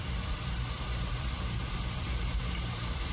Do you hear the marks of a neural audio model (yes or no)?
yes